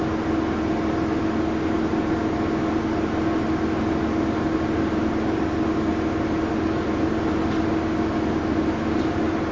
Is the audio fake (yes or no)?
no